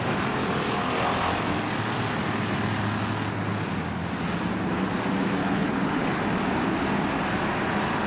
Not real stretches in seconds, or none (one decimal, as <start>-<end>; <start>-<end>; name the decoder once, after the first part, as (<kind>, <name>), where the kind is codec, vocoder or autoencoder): 5.4-6.2 (codec, HILCodec)